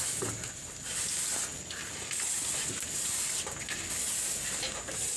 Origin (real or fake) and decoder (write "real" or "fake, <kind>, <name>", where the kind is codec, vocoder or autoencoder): real